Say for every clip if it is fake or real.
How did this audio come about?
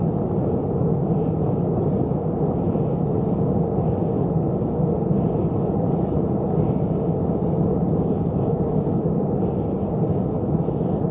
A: real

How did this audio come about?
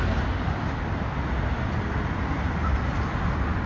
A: real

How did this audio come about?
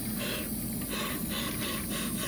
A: real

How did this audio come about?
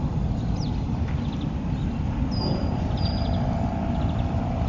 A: real